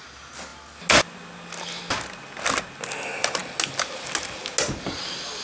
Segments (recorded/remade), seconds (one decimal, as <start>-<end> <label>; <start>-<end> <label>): 0.0-5.4 recorded